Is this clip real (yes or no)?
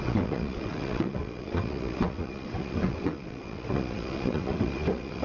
no